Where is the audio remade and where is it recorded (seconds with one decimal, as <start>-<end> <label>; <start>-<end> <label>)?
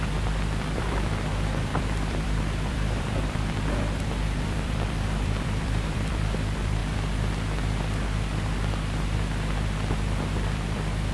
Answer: 0.0-6.8 remade; 6.8-10.3 recorded; 10.3-11.1 remade